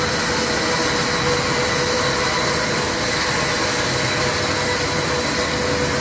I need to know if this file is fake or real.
real